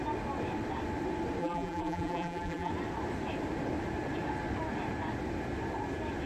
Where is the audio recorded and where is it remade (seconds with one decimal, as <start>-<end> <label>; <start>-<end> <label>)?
0.0-1.4 recorded; 1.4-2.7 remade; 2.7-6.3 recorded